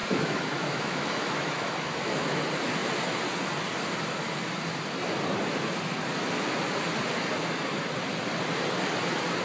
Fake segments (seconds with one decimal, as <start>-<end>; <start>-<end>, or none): 0.0-2.4